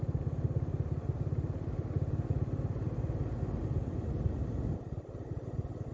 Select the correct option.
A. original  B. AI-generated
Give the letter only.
A